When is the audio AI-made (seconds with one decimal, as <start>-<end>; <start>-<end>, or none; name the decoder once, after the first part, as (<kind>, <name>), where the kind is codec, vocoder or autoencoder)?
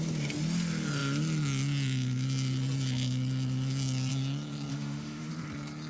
4.7-5.3 (autoencoder, DAC-VAE)